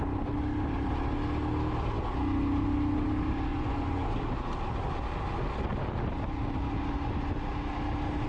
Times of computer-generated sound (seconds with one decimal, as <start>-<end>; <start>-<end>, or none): 3.5-4.2